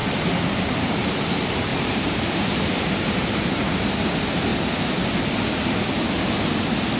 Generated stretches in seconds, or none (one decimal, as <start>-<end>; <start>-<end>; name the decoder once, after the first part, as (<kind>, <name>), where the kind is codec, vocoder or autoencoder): 0.0-1.1 (vocoder, BigVGAN v2); 1.7-4.0